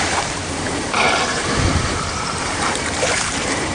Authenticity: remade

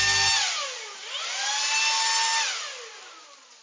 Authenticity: recorded